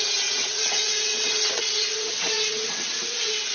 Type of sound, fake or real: fake